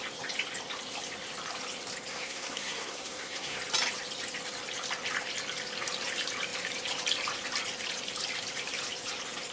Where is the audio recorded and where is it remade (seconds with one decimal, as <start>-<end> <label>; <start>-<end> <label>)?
0.0-2.1 recorded; 2.1-3.6 remade; 3.6-9.5 recorded